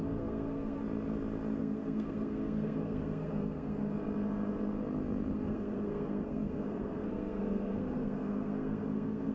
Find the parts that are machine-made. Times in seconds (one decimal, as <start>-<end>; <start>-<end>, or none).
0.0-0.8; 1.6-3.8; 5.3-9.3